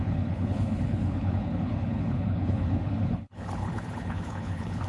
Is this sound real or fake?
fake